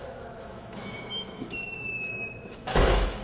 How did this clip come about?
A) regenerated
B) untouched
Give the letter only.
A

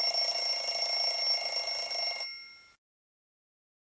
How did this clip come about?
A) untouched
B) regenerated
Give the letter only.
A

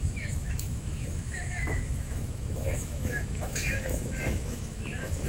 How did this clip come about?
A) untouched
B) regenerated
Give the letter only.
B